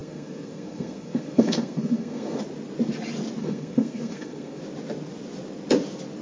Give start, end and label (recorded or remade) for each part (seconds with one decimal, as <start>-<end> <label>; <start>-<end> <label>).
0.0-2.4 remade; 2.4-3.4 recorded; 3.4-4.6 remade; 4.6-6.2 recorded